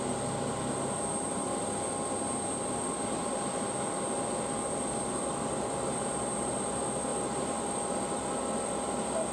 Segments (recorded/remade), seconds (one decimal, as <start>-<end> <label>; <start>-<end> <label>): 0.0-9.3 recorded